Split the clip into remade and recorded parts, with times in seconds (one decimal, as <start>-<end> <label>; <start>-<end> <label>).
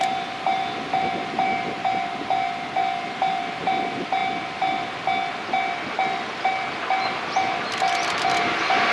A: 0.0-8.9 recorded